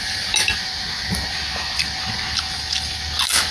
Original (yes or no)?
yes